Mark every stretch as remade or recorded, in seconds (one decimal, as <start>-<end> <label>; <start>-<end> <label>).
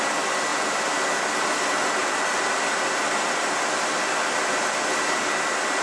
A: 0.0-0.5 recorded; 0.5-1.1 remade; 1.1-2.0 recorded; 2.0-5.3 remade; 5.3-5.8 recorded